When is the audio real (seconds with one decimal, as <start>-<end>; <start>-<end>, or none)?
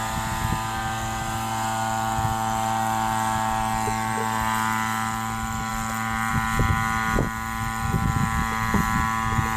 0.0-9.6